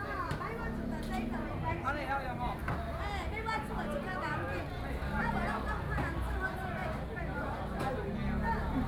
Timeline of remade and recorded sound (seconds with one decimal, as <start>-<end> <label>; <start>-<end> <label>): 0.0-6.8 recorded; 6.8-7.9 remade; 7.9-8.9 recorded